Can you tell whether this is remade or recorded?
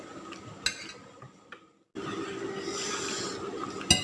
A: recorded